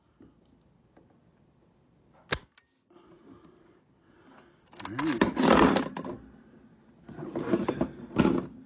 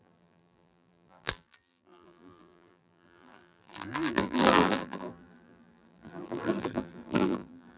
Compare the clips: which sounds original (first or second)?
first